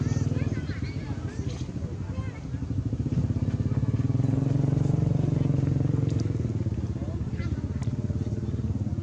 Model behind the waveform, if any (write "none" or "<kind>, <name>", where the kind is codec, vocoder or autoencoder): none